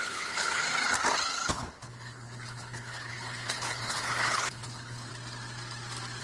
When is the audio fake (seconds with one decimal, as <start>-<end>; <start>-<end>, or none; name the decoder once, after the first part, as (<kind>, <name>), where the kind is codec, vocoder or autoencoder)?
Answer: 0.0-0.6 (codec, HILCodec); 1.5-5.1